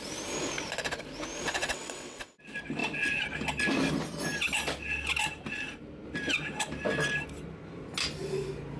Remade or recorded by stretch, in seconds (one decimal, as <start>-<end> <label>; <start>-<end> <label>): 0.0-1.6 recorded; 1.6-2.3 remade; 2.3-8.8 recorded